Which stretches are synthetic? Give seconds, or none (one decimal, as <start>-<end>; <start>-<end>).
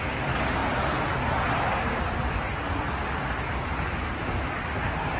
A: none